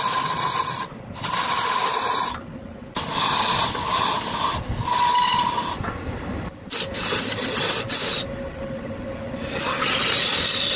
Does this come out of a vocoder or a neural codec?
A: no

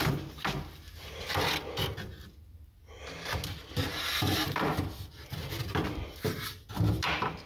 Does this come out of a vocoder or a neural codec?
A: no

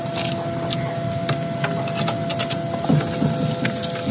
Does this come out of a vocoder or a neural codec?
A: no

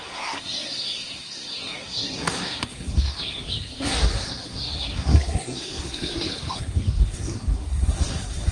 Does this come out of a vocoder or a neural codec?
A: yes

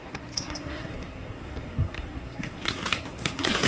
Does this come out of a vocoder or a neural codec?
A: yes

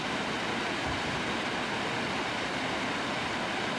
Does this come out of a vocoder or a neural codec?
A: no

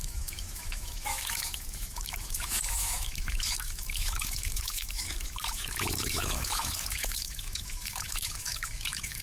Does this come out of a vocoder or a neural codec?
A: yes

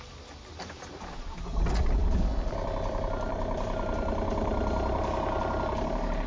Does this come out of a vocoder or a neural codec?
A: yes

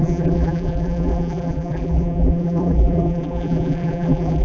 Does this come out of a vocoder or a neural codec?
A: yes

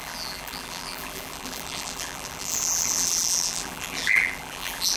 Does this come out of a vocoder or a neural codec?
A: yes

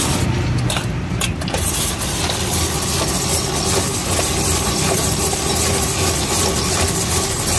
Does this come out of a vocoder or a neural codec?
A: no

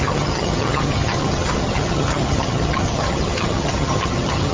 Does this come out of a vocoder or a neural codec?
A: yes